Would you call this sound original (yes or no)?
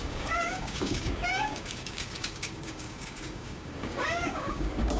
no